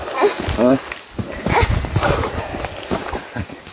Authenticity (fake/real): real